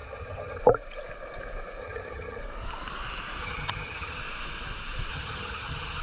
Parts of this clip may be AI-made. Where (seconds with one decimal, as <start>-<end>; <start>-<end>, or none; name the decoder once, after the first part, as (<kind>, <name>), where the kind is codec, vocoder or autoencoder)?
0.0-0.6 (vocoder, HiFi-GAN); 1.8-2.4; 3.4-4.2; 5.1-6.0